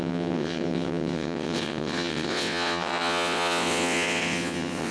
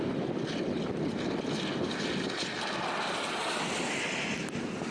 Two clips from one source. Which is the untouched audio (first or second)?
second